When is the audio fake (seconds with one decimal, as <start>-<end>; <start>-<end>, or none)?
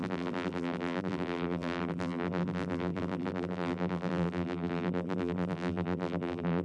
0.0-6.6